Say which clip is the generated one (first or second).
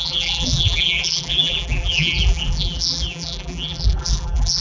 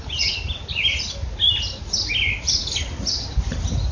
first